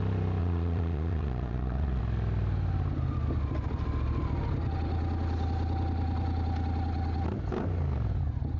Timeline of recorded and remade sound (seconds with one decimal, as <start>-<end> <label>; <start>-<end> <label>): 0.0-0.4 recorded; 0.4-2.0 remade; 2.0-8.6 recorded